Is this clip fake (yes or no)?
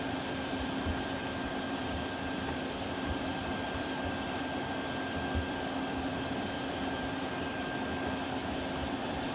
no